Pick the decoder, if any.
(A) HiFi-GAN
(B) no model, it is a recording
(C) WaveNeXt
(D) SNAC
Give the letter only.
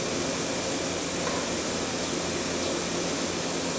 B